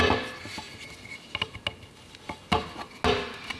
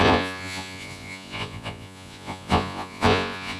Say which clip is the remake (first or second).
second